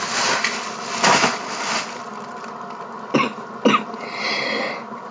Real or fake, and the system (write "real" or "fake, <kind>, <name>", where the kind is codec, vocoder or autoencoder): real